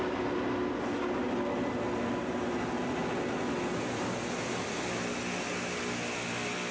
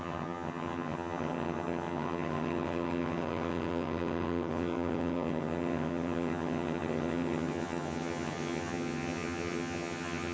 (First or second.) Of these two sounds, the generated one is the second